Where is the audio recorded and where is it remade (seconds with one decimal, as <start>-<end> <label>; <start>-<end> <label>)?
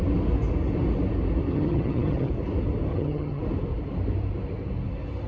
0.0-1.5 recorded; 1.5-2.3 remade; 2.3-2.9 recorded; 2.9-3.4 remade; 3.4-5.3 recorded